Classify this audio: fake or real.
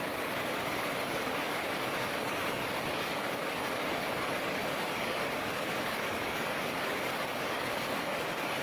fake